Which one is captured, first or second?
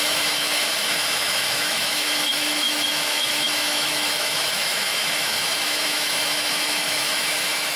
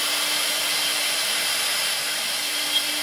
second